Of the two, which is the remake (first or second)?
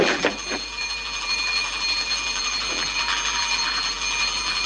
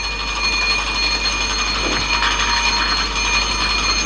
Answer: first